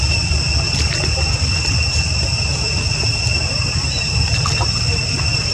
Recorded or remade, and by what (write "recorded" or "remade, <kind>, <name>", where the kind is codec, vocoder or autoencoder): remade, vocoder, BigVGAN v2